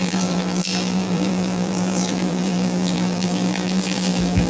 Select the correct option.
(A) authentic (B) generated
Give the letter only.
B